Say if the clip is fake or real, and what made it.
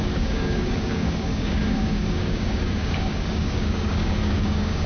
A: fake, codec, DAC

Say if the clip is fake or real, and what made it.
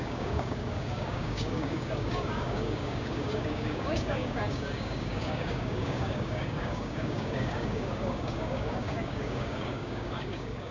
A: fake, codec, DAC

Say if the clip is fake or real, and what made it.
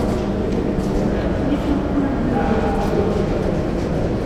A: real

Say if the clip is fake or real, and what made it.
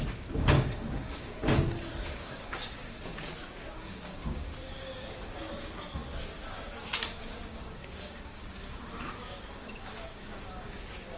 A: fake, codec, DAC